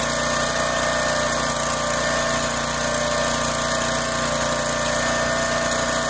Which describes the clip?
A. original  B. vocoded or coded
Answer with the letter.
A